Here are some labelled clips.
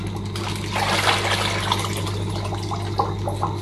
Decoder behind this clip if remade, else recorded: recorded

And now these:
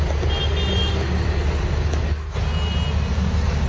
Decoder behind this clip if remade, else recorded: recorded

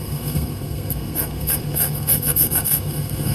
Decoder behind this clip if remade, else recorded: remade, codec, SNAC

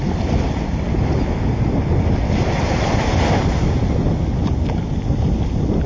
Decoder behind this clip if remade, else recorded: recorded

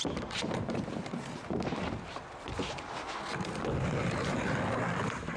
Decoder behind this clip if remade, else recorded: recorded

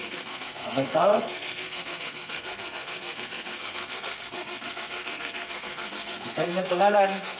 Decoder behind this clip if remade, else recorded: remade, codec, SNAC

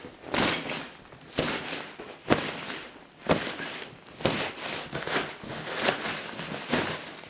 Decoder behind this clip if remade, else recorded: recorded